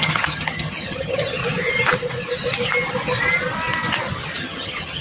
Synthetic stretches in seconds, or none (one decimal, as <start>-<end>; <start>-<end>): 0.0-1.4; 4.4-5.0